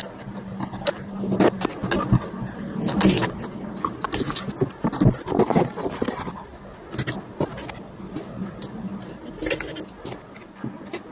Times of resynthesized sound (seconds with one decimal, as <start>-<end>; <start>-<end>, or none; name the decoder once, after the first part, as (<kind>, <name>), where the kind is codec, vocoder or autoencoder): none